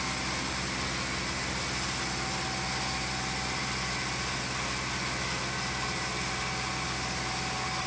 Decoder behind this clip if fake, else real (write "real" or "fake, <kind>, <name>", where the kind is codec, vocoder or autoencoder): real